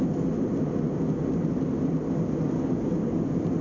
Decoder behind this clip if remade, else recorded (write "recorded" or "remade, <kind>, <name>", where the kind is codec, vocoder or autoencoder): recorded